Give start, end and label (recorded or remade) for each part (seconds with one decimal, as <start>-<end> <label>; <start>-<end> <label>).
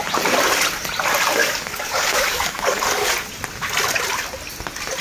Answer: 0.0-1.4 recorded; 1.4-3.1 remade; 3.1-5.0 recorded